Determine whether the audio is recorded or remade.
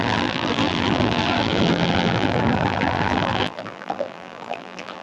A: remade